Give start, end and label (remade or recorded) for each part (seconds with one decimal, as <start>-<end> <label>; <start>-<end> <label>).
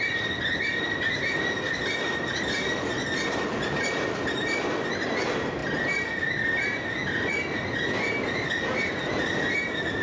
0.0-10.0 recorded